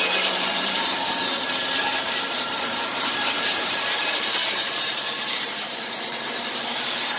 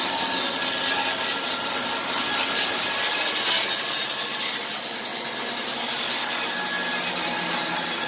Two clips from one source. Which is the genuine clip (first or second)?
second